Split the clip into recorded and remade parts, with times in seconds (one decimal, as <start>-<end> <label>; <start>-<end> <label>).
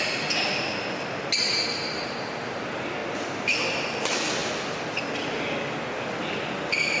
0.0-7.0 recorded